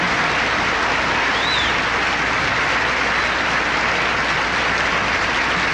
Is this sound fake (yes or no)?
no